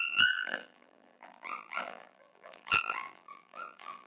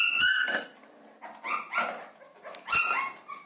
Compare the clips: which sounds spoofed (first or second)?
first